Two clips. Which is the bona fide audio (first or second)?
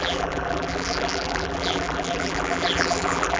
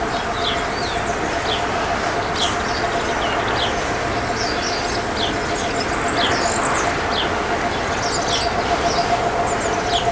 second